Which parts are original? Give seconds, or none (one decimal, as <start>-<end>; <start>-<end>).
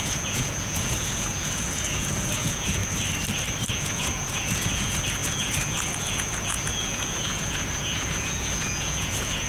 2.8-3.7